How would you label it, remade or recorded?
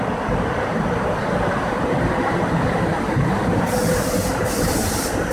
remade